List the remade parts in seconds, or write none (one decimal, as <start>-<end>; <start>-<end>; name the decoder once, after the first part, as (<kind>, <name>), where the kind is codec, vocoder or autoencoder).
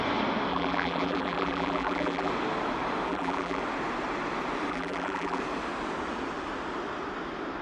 0.5-2.3 (vocoder, BigVGAN v2); 3.1-3.6; 4.7-5.4